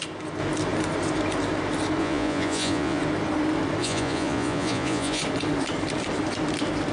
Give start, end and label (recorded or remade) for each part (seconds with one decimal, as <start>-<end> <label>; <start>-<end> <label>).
0.0-2.0 recorded; 2.0-3.0 remade; 3.0-3.8 recorded; 3.8-5.2 remade; 5.2-6.9 recorded